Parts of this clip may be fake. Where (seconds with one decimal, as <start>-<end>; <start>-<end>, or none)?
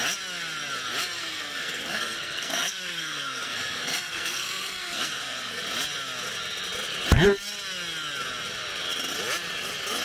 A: 1.2-5.6